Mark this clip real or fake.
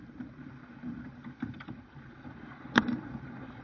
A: fake